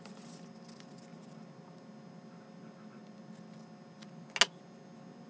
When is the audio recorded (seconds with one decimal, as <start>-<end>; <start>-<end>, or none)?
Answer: 0.0-5.3